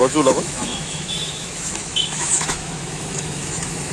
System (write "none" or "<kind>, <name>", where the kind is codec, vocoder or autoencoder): autoencoder, DAC-VAE